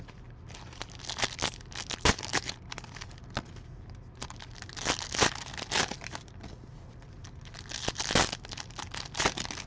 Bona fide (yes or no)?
yes